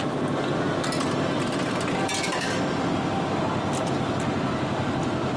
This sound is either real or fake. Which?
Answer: real